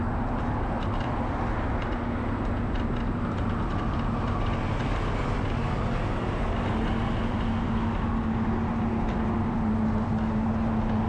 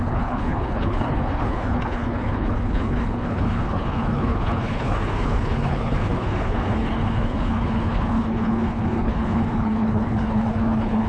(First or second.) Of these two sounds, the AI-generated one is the second